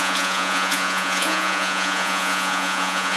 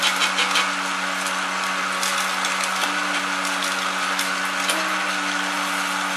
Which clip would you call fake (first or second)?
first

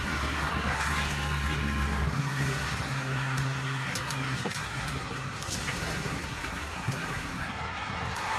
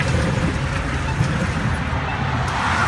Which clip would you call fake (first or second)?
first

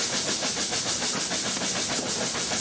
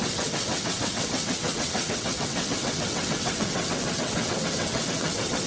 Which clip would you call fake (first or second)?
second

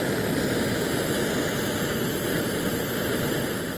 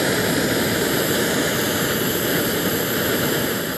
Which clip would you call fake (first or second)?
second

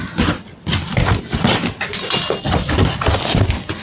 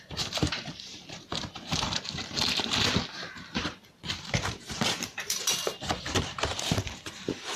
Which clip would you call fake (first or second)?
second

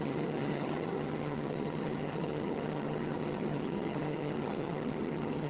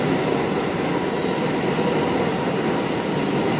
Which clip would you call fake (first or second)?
first